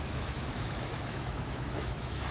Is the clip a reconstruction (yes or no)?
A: yes